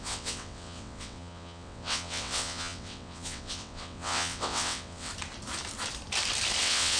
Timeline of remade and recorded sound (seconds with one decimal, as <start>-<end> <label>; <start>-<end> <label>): 0.0-5.1 remade; 5.1-6.6 recorded; 6.6-7.0 remade